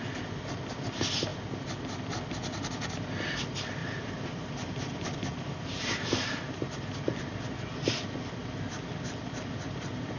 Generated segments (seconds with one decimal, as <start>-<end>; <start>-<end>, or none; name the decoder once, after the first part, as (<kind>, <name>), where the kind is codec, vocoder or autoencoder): 3.8-7.5 (vocoder, BigVGAN v2)